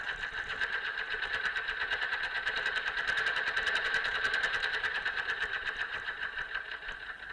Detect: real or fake fake